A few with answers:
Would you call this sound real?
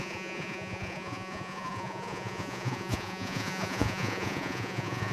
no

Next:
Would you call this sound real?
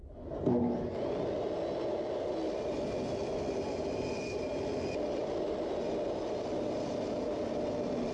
yes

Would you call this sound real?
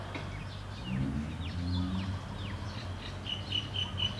yes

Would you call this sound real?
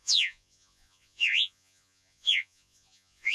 no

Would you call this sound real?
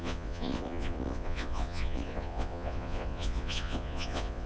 no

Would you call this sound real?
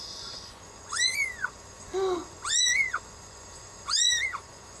no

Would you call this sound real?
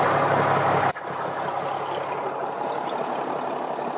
yes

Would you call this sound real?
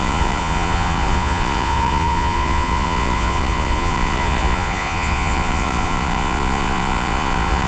no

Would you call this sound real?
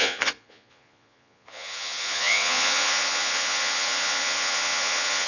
no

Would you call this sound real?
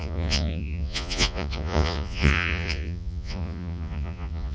no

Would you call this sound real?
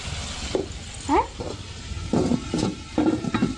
yes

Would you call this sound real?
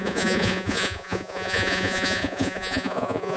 no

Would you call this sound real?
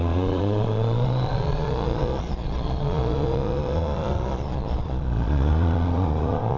no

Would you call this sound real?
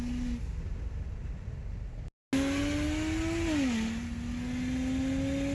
yes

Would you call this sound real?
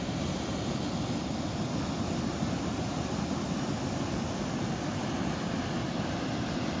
yes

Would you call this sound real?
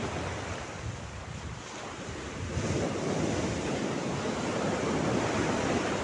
yes